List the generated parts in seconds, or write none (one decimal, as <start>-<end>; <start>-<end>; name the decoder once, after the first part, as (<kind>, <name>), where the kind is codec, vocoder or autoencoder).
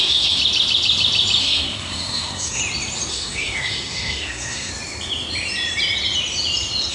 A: 0.0-0.4 (codec, SNAC); 1.4-2.6; 3.1-4.7